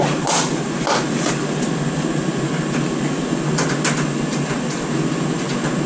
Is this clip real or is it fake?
real